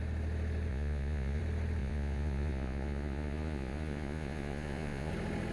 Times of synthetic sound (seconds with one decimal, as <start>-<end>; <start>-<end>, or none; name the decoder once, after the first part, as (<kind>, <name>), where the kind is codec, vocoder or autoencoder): 0.7-1.4 (vocoder, Vocos); 1.8-5.1